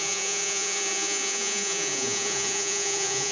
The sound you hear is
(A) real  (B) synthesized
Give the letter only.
B